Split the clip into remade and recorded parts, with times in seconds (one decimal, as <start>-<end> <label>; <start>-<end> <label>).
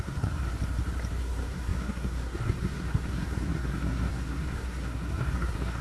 0.0-0.5 remade; 0.5-1.2 recorded; 1.2-5.8 remade